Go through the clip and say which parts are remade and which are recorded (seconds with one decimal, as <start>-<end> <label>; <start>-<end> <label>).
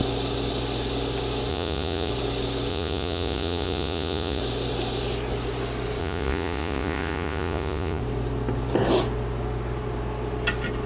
0.0-1.5 recorded; 1.5-2.1 remade; 2.1-2.7 recorded; 2.7-4.4 remade; 4.4-6.0 recorded; 6.0-8.0 remade; 8.0-10.9 recorded